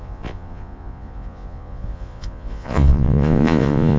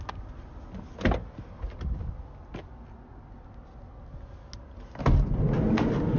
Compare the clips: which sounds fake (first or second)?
first